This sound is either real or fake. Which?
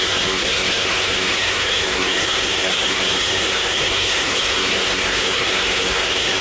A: fake